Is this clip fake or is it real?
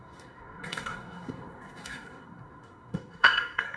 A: fake